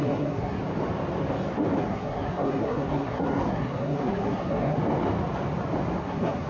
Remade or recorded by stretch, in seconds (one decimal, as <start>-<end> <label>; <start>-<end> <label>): 0.0-0.6 remade; 0.6-1.8 recorded; 1.8-4.8 remade; 4.8-6.0 recorded; 6.0-6.5 remade